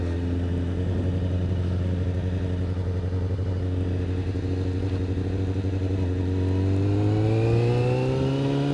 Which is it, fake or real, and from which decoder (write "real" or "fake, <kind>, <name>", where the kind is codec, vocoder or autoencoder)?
real